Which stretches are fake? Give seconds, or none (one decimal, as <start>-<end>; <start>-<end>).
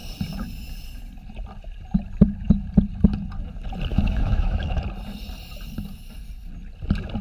3.9-4.8